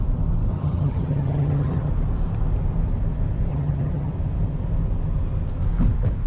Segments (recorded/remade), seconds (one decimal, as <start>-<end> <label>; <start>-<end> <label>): 0.0-0.5 recorded; 0.5-1.9 remade; 1.9-3.5 recorded; 3.5-4.1 remade; 4.1-6.3 recorded